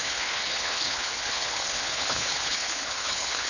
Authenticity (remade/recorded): remade